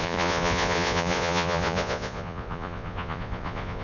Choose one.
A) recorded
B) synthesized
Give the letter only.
B